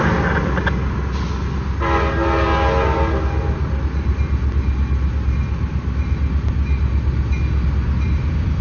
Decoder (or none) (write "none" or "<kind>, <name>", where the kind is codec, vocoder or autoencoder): none